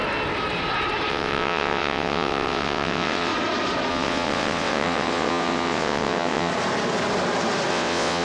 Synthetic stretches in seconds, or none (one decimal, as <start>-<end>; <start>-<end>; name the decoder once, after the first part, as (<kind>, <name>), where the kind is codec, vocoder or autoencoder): 1.1-3.3 (vocoder, WaveNeXt); 3.9-6.5; 7.7-8.2